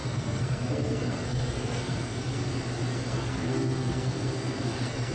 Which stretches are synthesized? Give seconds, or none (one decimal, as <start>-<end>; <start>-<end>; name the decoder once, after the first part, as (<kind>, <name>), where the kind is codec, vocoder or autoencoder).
0.0-2.5 (codec, SNAC); 2.9-5.1